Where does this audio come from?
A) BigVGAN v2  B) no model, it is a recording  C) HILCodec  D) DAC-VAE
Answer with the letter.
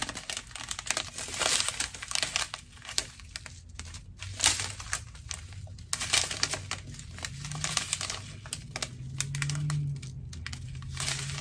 B